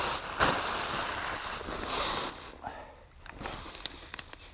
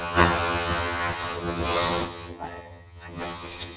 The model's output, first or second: second